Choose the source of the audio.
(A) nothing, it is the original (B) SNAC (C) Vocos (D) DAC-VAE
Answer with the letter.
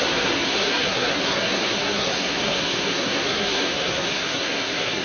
B